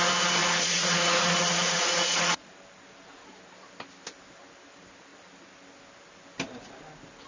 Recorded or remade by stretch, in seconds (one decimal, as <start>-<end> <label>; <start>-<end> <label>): 0.0-0.4 recorded; 0.4-2.5 remade; 2.5-7.3 recorded